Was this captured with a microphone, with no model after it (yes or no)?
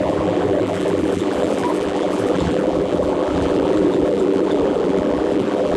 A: no